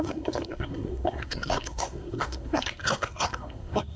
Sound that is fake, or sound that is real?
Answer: fake